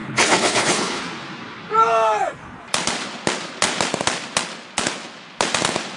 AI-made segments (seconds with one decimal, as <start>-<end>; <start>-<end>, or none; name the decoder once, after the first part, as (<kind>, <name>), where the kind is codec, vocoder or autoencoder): 0.0-1.0 (codec, HILCodec)

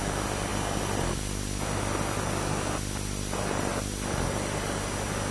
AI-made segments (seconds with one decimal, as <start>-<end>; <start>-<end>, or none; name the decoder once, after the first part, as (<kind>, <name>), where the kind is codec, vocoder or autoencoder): none